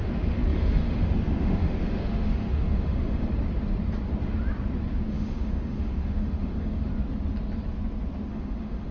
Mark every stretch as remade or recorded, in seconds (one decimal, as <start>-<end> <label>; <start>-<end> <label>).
0.0-3.3 remade; 3.3-5.1 recorded; 5.1-6.9 remade; 6.9-8.3 recorded; 8.3-8.9 remade